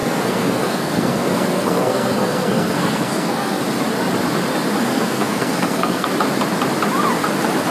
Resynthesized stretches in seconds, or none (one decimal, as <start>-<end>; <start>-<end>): 0.0-3.6; 4.9-6.1